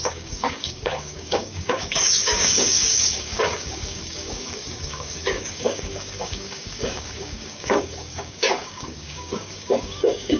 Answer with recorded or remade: remade